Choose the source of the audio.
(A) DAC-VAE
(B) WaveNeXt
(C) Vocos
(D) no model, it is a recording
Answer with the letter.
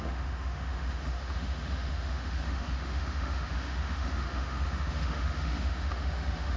A